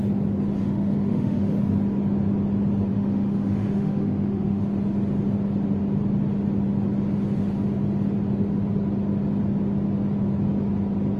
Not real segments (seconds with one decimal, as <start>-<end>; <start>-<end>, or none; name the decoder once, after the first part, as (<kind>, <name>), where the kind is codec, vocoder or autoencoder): 0.6-1.6 (autoencoder, DAC-VAE); 2.9-4.6